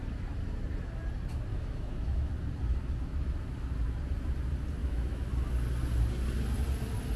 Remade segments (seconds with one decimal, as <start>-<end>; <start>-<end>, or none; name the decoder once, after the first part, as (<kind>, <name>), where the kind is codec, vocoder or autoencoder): 1.5-2.3 (autoencoder, DAC-VAE); 4.8-5.3